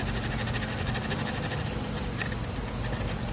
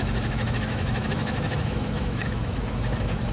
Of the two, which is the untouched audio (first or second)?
first